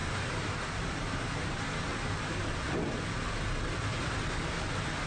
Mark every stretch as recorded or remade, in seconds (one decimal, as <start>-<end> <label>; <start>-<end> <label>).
0.0-3.1 remade; 3.1-5.1 recorded